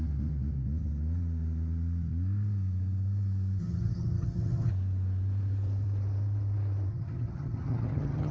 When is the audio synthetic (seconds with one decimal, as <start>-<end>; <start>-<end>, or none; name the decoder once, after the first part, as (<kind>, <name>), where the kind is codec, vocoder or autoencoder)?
3.6-4.7 (vocoder, HiFi-GAN); 6.9-8.3